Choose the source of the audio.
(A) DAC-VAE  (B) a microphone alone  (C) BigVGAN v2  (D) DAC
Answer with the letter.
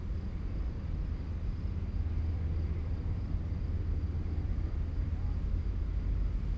B